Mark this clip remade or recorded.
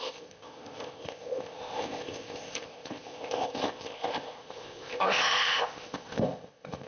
remade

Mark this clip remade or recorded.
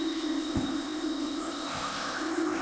remade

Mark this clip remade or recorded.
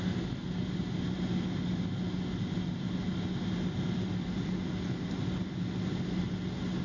recorded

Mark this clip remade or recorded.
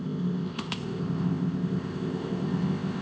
remade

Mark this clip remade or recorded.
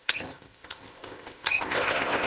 remade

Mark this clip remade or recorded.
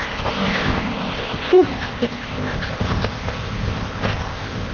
remade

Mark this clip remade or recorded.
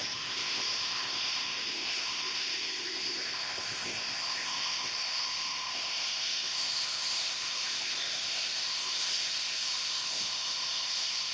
remade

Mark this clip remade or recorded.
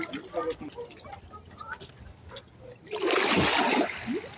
recorded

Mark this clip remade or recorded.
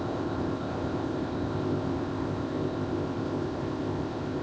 remade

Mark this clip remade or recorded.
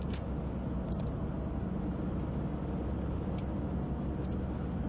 recorded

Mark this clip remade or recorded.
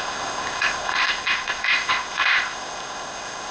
remade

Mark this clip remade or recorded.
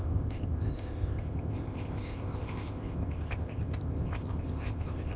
remade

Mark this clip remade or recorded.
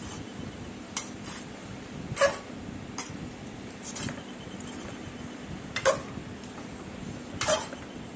recorded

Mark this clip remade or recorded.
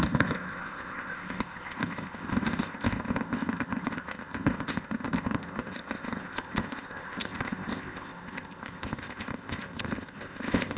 remade